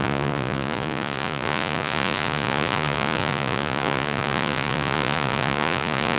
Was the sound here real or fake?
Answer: fake